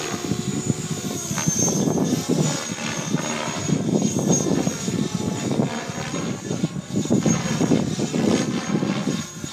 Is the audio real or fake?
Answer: real